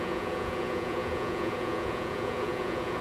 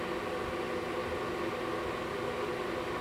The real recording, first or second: second